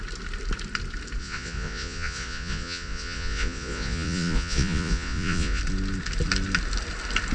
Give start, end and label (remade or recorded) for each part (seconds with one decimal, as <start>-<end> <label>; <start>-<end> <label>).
0.0-1.2 recorded; 1.2-5.6 remade; 5.6-7.3 recorded